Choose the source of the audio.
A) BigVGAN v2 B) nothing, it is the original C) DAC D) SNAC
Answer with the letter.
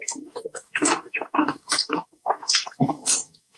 C